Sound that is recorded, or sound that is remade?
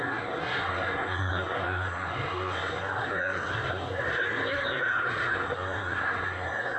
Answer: remade